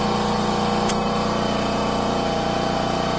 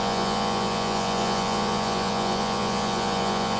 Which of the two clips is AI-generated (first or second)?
second